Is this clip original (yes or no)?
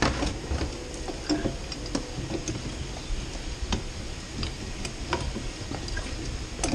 yes